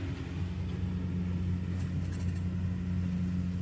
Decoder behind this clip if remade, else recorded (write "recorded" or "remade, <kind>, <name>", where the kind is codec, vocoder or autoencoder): recorded